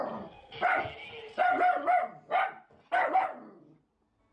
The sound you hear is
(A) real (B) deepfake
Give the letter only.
A